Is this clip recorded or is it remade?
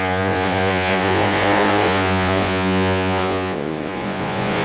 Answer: remade